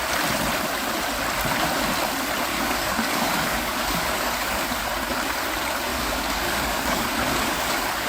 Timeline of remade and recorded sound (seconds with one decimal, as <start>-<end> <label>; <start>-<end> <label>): 0.0-2.5 recorded; 2.5-4.7 remade; 4.7-5.9 recorded; 5.9-8.1 remade